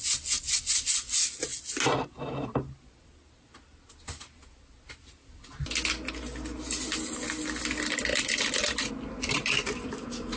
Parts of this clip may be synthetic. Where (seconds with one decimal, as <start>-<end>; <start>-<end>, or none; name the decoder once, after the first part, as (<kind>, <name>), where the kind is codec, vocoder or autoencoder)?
none